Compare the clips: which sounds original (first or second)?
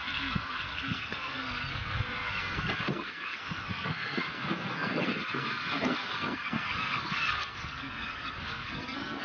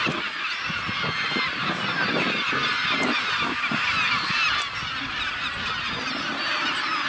second